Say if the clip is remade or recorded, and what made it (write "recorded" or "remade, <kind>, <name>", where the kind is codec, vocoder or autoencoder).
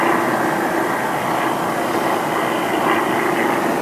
remade, vocoder, BigVGAN v2